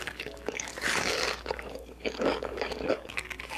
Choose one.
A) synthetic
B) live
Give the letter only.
A